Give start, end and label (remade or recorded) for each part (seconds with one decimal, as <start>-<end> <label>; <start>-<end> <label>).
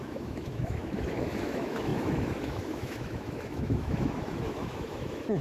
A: 0.0-5.4 remade